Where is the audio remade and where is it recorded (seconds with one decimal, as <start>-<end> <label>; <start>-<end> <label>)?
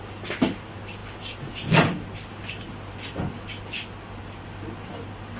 0.0-5.4 recorded